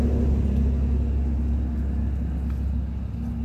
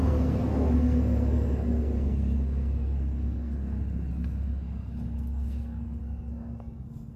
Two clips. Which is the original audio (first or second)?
first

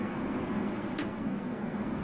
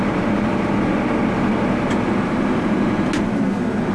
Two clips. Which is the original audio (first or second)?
second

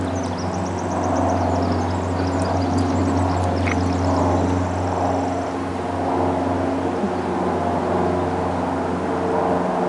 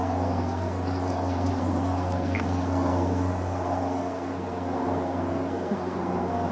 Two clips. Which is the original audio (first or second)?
first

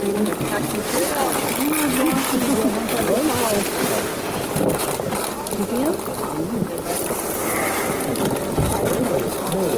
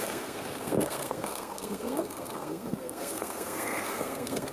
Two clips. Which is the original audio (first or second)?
first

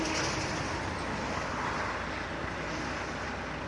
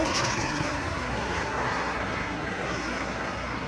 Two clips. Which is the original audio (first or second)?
first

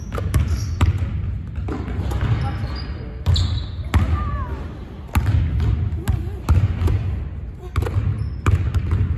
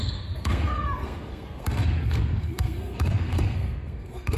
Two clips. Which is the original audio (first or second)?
first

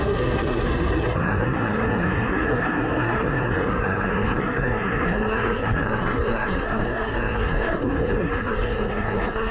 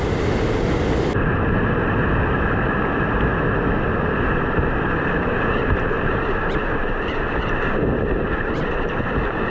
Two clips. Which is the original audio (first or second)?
second